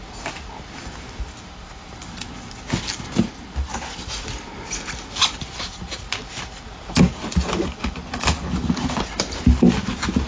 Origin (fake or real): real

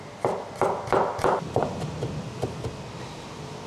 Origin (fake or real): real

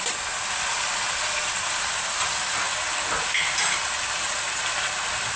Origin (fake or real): real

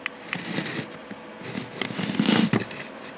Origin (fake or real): real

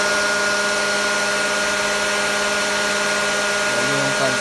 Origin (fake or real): real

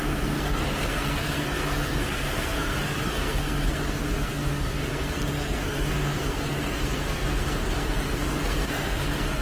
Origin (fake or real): fake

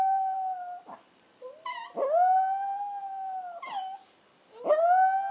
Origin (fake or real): real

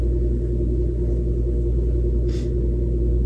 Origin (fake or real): real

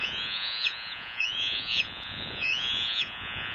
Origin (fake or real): fake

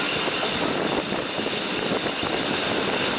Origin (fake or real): real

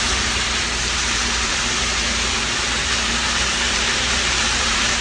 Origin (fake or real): fake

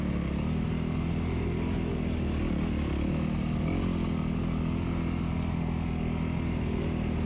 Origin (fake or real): real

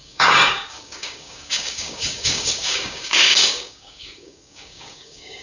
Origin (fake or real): fake